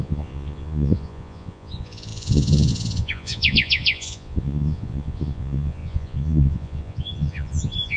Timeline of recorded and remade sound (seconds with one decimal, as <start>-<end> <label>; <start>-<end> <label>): 0.0-8.0 remade